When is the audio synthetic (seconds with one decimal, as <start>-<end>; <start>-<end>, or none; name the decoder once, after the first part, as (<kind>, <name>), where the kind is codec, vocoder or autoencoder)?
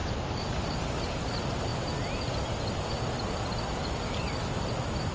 0.0-1.7 (vocoder, BigVGAN v2)